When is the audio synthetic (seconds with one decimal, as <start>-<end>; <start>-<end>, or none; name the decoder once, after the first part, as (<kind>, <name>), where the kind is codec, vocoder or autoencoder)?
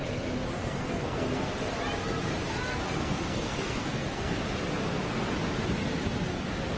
0.6-1.5 (codec, SNAC); 2.7-4.4